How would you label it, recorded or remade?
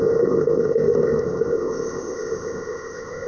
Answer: remade